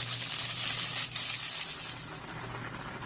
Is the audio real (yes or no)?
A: yes